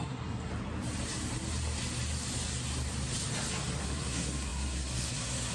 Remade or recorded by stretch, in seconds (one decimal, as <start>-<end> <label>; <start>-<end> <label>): 0.0-0.5 remade; 0.5-3.8 recorded; 3.8-5.5 remade